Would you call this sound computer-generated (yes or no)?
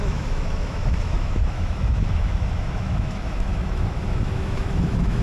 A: yes